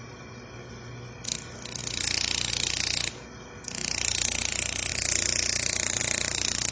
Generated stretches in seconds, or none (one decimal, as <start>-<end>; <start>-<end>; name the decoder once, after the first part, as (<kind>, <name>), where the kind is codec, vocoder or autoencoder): 3.8-4.5 (vocoder, BigVGAN v2)